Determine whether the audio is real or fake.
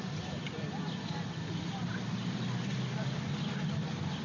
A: real